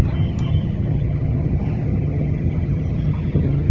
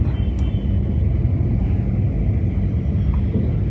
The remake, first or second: first